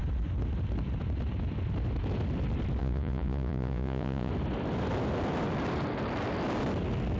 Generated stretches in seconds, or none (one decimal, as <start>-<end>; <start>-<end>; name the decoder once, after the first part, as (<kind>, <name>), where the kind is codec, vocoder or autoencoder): 2.8-4.3 (vocoder, Vocos)